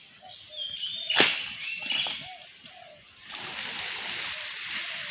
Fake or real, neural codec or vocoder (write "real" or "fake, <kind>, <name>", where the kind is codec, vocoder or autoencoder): real